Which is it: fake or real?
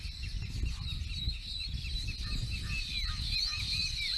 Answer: real